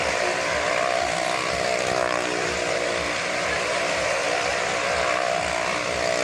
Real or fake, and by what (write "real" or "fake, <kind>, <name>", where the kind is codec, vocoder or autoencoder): real